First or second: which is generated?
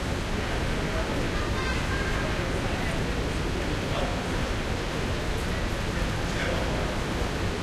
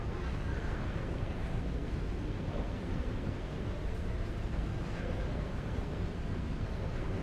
second